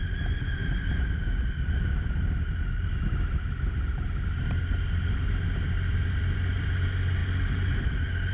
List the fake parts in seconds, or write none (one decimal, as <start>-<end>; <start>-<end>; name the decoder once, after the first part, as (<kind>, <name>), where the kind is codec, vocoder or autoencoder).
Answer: none